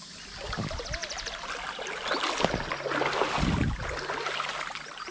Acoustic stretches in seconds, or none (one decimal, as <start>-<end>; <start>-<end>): 0.0-5.1